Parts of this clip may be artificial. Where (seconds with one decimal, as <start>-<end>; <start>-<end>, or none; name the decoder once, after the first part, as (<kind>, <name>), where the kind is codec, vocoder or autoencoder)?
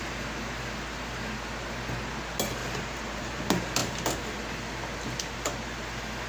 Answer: 2.6-3.4 (vocoder, BigVGAN v2)